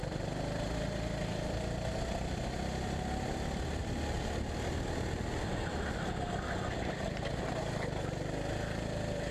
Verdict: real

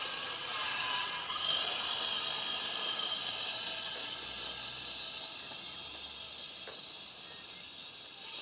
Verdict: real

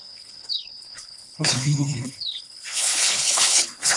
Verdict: fake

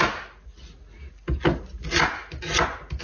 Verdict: real